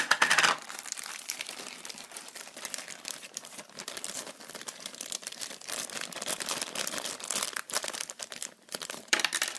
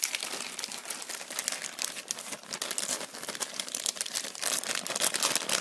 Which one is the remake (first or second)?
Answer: first